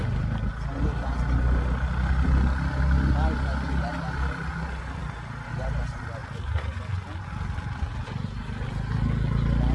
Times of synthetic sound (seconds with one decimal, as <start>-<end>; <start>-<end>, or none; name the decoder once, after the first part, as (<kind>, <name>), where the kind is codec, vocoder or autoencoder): none